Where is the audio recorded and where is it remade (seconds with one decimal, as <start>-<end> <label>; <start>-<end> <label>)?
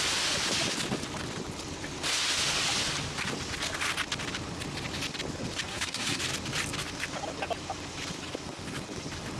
0.0-5.7 recorded; 5.7-6.2 remade; 6.2-9.4 recorded